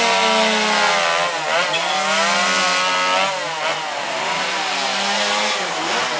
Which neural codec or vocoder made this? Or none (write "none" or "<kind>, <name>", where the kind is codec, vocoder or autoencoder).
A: none